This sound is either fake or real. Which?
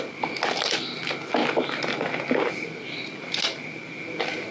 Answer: real